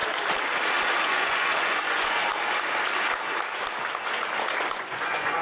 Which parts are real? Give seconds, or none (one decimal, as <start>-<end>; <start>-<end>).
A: 0.0-1.0; 2.2-4.7